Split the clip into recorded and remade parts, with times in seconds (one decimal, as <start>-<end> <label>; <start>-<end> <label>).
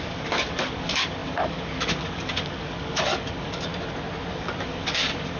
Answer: 0.0-3.7 remade; 3.7-4.3 recorded; 4.3-5.4 remade